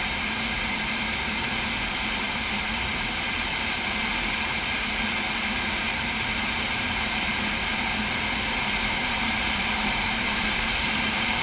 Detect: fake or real fake